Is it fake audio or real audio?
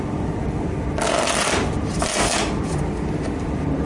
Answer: real